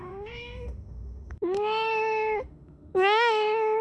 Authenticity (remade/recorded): remade